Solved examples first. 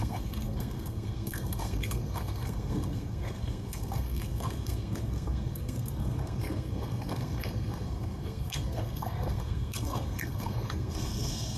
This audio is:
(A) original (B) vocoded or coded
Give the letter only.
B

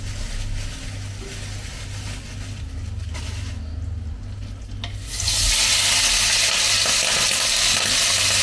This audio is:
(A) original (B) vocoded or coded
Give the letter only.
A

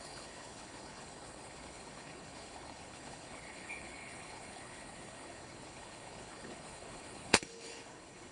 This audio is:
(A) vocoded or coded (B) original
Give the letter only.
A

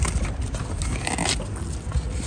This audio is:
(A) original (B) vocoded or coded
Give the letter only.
A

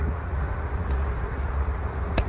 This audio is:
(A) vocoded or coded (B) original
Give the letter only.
A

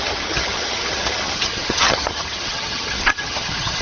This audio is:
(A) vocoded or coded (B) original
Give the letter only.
A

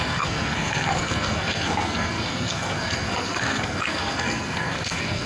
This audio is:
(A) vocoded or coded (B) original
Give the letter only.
A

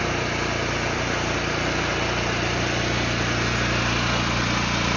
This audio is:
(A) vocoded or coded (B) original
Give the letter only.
B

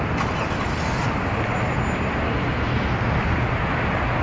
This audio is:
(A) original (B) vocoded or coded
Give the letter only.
A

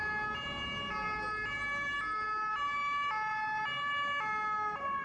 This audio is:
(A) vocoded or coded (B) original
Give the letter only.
B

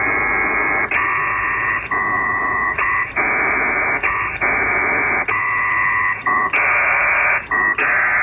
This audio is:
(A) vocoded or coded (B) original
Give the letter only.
B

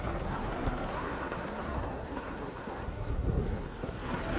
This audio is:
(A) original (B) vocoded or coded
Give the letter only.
B